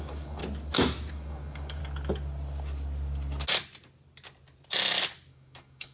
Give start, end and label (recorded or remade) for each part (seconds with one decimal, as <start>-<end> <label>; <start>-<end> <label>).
0.0-0.4 remade; 0.4-1.1 recorded; 1.1-1.8 remade; 1.8-5.3 recorded; 5.3-5.9 remade